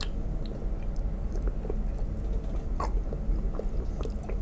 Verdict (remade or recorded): recorded